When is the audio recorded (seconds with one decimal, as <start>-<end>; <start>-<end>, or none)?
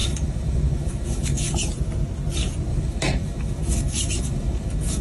1.5-2.7